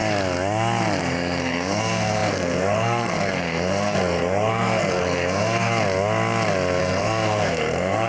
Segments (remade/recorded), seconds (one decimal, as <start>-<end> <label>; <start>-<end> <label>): 0.0-1.0 recorded; 1.0-5.7 remade; 5.7-6.8 recorded; 6.8-8.1 remade